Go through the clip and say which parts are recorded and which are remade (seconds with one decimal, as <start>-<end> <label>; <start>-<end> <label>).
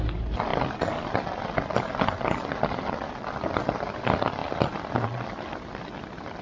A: 0.0-6.4 recorded